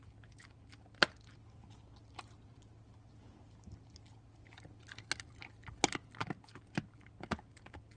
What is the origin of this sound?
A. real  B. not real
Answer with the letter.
A